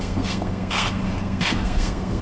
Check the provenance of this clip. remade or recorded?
remade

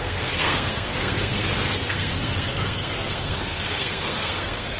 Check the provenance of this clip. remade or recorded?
remade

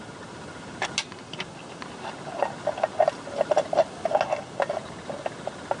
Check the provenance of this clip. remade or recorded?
recorded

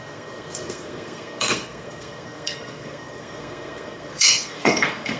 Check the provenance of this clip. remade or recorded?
remade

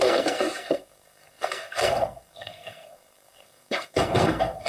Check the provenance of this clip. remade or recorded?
remade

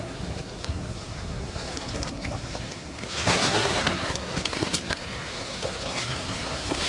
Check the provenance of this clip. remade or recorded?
remade